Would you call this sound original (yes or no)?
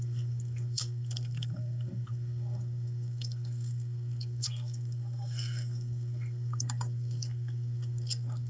no